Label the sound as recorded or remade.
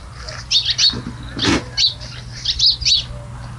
recorded